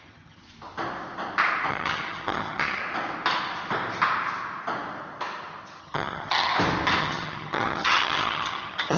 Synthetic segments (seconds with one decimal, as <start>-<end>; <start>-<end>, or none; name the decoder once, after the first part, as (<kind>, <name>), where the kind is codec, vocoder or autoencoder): 0.0-0.4 (vocoder, HiFi-GAN); 1.7-2.8; 5.8-6.5; 7.0-9.0